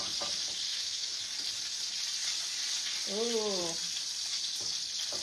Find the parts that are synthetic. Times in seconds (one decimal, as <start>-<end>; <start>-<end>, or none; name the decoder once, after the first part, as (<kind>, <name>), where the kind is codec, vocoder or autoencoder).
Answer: 0.7-1.2 (autoencoder, DAC-VAE)